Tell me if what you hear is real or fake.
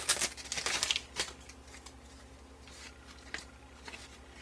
real